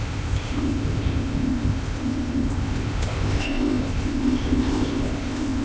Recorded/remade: remade